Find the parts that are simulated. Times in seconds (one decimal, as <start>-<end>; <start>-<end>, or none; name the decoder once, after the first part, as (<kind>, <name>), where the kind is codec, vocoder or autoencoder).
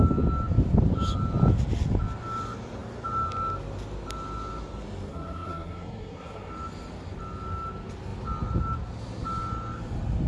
5.1-6.5 (codec, SNAC)